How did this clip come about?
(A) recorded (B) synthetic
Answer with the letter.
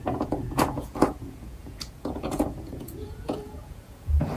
B